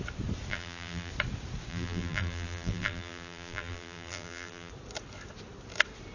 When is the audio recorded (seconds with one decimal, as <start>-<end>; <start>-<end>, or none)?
0.0-0.5; 1.1-1.7; 4.7-6.1